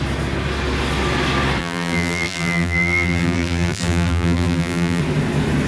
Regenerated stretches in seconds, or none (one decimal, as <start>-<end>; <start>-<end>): 1.6-5.0